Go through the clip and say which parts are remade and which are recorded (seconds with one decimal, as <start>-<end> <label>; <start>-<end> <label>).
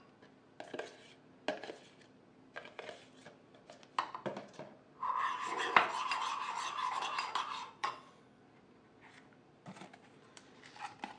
0.0-7.8 recorded; 7.8-8.4 remade; 8.4-11.2 recorded